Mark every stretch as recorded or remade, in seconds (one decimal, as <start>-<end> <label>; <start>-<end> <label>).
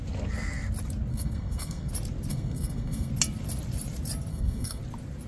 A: 0.0-1.1 recorded; 1.1-1.9 remade; 1.9-2.3 recorded; 2.3-3.1 remade; 3.1-4.3 recorded; 4.3-4.8 remade; 4.8-5.3 recorded